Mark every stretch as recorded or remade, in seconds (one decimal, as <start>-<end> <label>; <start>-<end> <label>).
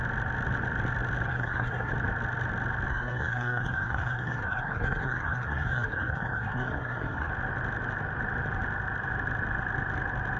0.0-1.3 recorded; 1.3-1.9 remade; 1.9-2.9 recorded; 2.9-7.3 remade; 7.3-10.4 recorded